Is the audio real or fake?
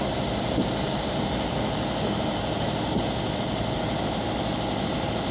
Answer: real